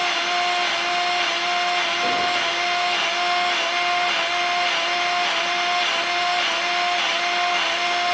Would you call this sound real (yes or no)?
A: yes